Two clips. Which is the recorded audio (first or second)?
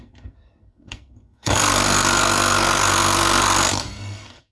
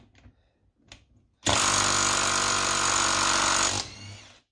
second